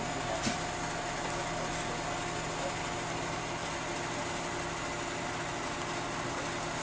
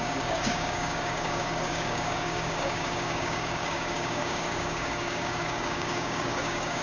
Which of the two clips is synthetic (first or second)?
second